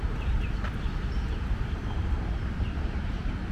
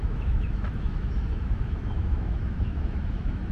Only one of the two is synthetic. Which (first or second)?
second